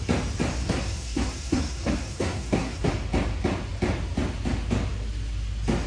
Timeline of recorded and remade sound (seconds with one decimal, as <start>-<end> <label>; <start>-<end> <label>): 0.0-0.6 recorded; 0.6-2.9 remade; 2.9-5.9 recorded

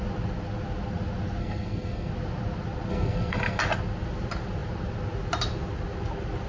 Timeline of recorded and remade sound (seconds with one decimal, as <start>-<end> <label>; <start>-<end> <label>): 0.0-1.4 recorded; 1.4-2.1 remade; 2.1-2.9 recorded; 2.9-3.6 remade; 3.6-6.5 recorded

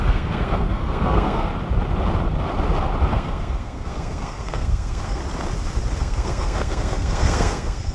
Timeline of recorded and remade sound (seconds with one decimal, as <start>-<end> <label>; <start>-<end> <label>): 0.0-1.5 remade; 1.5-3.1 recorded; 3.1-5.2 remade; 5.2-6.0 recorded; 6.0-7.9 remade